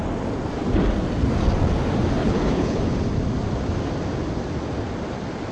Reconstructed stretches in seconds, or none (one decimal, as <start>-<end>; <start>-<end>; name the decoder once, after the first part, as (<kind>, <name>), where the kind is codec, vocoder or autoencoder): 2.2-2.8 (codec, HILCodec)